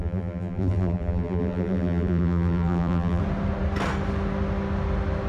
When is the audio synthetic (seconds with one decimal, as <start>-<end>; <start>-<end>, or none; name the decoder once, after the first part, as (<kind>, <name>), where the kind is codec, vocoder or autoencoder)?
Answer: 0.0-3.2 (vocoder, BigVGAN v2)